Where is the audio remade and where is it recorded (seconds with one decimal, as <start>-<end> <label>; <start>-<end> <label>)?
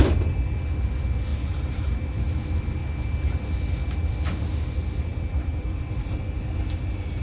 0.0-1.3 recorded; 1.3-2.2 remade; 2.2-5.1 recorded; 5.1-5.8 remade; 5.8-7.2 recorded